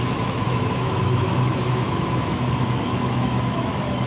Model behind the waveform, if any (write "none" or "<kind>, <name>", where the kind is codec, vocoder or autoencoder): autoencoder, DAC-VAE